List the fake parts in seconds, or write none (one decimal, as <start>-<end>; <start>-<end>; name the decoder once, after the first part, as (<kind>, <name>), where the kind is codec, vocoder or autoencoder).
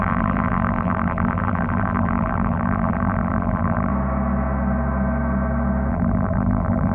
0.0-3.9 (vocoder, BigVGAN v2); 5.9-6.9